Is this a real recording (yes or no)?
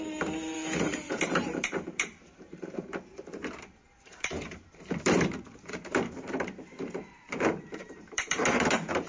no